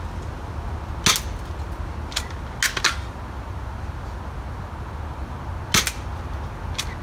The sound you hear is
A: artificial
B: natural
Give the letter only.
B